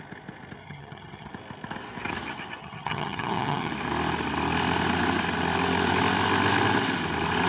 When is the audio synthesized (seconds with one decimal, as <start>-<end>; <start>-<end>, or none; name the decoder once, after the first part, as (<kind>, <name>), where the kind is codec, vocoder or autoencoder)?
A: 0.6-1.3 (vocoder, HiFi-GAN); 2.6-3.7